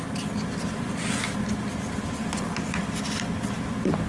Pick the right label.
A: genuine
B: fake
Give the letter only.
A